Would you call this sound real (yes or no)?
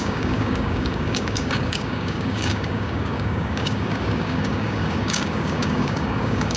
no